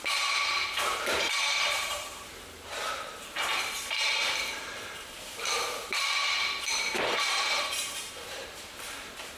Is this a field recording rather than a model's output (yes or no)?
no